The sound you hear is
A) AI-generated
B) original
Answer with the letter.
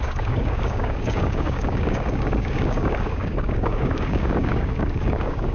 A